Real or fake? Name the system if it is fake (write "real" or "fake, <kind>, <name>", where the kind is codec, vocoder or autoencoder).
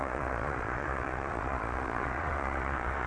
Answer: fake, vocoder, Vocos